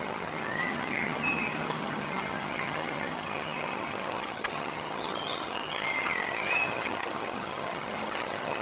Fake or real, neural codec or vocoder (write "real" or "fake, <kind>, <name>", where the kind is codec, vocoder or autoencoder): fake, vocoder, HiFi-GAN